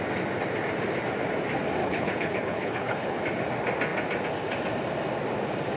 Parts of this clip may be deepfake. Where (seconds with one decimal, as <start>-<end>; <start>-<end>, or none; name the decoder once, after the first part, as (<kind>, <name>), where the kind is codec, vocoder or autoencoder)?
1.8-3.2 (codec, HILCodec)